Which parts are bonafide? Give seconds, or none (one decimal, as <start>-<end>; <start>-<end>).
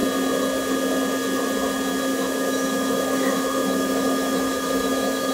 0.0-2.1